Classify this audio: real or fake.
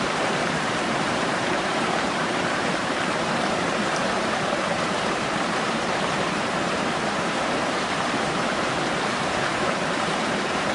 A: fake